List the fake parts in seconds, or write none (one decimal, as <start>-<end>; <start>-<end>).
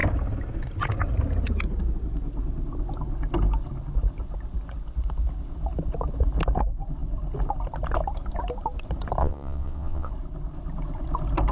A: 9.2-10.1